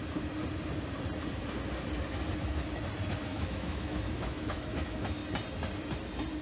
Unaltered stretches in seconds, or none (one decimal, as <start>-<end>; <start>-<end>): 0.0-3.3; 5.2-6.4